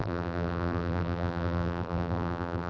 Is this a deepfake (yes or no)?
yes